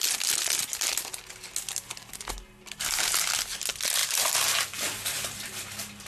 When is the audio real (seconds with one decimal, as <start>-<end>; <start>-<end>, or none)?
0.0-4.0